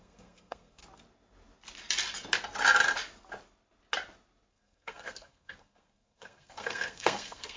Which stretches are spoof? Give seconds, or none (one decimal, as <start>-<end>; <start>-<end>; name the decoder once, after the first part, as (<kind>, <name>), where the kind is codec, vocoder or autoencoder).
0.0-0.8 (codec, SNAC); 4.5-7.6